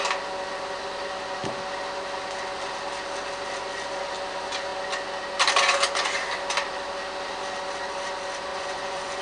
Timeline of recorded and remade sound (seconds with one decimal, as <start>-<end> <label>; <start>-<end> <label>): 0.0-8.5 recorded; 8.5-9.2 remade